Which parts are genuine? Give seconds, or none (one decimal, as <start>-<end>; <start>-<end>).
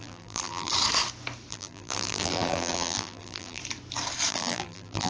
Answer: 0.7-1.5; 3.6-4.3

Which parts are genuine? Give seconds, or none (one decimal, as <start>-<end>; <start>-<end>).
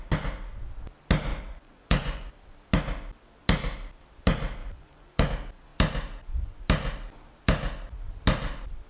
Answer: 0.0-1.3; 2.3-4.6; 5.3-8.9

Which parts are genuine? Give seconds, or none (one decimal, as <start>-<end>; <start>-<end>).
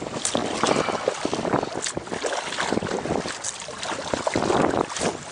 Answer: 0.0-5.3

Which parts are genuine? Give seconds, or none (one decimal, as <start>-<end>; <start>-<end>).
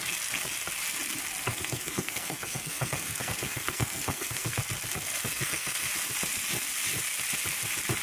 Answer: 0.0-1.5; 4.6-5.3; 5.9-8.0